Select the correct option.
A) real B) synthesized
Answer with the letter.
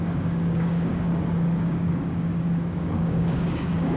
B